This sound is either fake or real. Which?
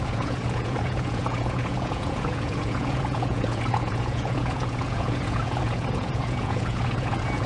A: fake